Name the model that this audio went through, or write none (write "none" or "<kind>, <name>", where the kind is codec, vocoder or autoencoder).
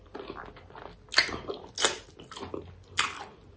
none